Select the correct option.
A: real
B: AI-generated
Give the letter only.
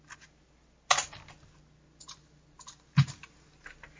A